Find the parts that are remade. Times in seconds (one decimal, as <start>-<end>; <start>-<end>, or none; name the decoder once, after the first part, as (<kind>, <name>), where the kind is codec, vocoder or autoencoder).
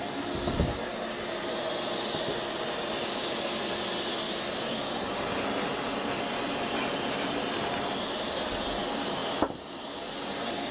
none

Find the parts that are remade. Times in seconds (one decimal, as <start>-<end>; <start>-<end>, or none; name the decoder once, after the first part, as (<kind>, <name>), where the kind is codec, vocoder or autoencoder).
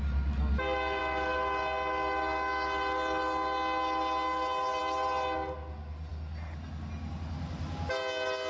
none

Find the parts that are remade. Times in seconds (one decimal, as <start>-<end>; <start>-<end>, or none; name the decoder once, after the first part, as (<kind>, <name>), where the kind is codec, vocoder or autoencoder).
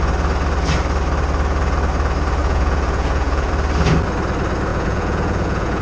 2.4-3.5 (vocoder, Vocos); 4.7-5.8